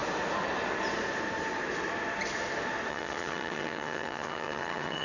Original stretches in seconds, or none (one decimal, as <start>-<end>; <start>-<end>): 0.0-2.9